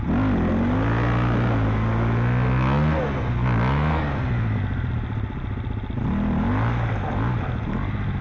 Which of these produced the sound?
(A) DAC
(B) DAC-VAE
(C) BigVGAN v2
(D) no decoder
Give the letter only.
D